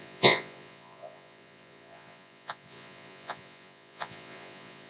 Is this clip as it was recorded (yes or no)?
no